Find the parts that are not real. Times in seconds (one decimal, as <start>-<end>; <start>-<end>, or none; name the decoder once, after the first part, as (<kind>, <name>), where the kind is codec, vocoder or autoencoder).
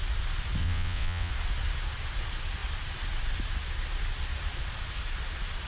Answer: 0.6-1.3 (vocoder, WaveNeXt)